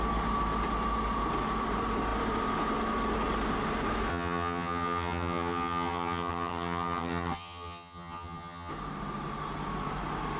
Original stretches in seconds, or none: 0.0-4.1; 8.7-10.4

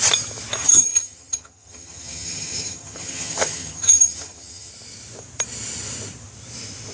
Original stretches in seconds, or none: 0.0-0.6; 4.7-6.9